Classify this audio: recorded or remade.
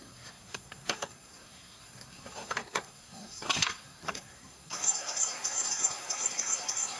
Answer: remade